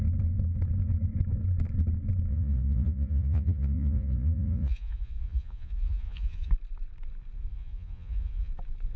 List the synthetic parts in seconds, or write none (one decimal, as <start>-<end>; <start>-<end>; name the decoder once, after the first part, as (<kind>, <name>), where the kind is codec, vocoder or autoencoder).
2.3-6.5 (vocoder, Vocos); 7.5-8.5

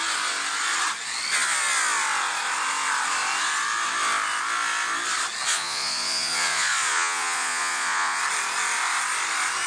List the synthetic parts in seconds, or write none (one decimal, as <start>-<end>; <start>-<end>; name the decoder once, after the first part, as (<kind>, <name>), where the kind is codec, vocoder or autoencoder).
5.5-8.2 (vocoder, Vocos)

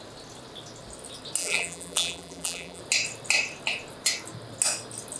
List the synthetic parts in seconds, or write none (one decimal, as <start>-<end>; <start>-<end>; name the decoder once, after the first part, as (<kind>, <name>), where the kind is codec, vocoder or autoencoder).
1.4-2.8 (vocoder, BigVGAN v2)

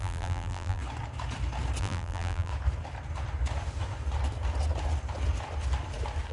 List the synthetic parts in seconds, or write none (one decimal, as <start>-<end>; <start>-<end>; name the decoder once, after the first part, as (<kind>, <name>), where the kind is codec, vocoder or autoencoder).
0.0-0.8 (vocoder, BigVGAN v2); 1.8-2.5

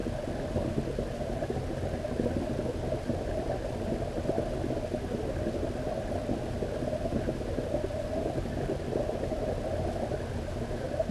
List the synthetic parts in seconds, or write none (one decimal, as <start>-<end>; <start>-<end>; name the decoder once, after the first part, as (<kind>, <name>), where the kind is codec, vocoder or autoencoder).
none

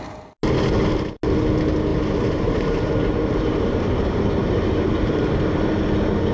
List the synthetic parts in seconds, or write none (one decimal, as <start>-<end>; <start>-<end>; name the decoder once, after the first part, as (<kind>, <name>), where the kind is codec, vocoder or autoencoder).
1.9-5.6 (vocoder, BigVGAN v2)

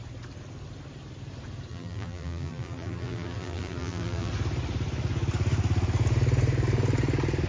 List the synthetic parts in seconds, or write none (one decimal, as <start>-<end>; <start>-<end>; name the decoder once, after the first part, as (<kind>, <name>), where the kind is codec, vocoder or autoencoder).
1.7-4.3 (vocoder, BigVGAN v2)

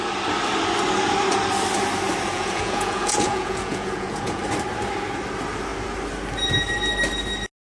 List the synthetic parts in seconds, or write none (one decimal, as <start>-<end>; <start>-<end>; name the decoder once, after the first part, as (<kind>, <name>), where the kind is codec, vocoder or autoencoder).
2.3-4.4 (vocoder, Vocos)